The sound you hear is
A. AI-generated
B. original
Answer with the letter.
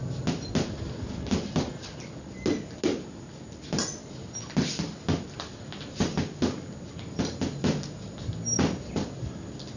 B